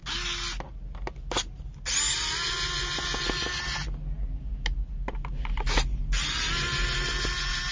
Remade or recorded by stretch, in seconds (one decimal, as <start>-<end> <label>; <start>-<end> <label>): 0.0-7.7 recorded